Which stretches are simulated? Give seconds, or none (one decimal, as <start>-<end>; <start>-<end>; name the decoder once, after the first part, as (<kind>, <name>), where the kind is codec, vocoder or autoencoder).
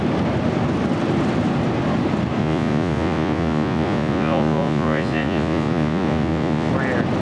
2.4-6.7 (vocoder, Vocos)